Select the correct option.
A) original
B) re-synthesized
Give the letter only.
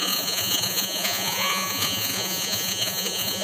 B